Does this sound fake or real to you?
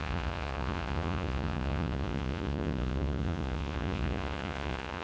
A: fake